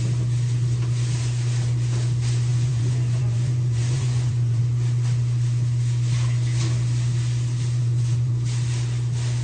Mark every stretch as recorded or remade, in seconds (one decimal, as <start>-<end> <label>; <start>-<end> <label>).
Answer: 0.0-2.5 recorded; 2.5-4.6 remade; 4.6-7.8 recorded; 7.8-8.3 remade; 8.3-9.4 recorded